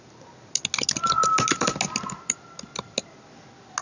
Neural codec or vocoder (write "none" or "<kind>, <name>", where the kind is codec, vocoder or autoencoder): none